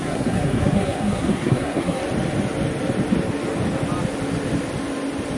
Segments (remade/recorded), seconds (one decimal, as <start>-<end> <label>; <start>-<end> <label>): 0.0-2.0 remade; 2.0-5.4 recorded